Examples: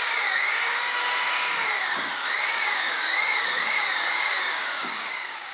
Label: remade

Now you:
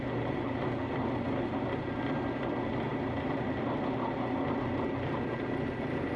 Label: recorded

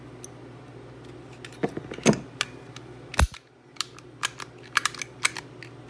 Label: recorded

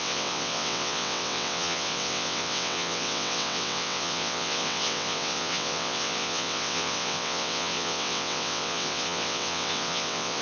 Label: remade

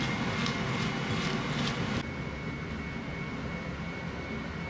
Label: recorded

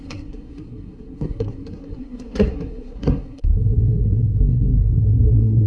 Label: remade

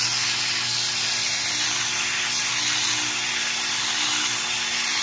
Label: recorded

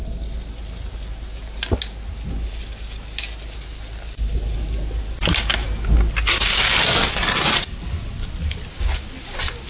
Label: recorded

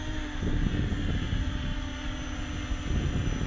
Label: recorded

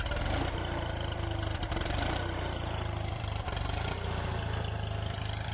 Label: remade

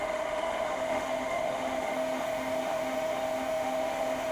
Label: remade